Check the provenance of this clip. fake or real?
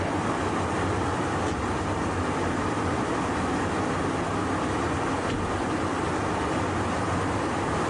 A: real